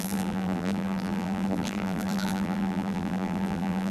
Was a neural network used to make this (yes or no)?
yes